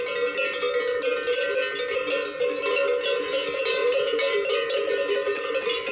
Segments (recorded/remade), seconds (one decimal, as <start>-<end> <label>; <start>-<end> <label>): 0.0-3.8 recorded; 3.8-4.9 remade; 4.9-5.9 recorded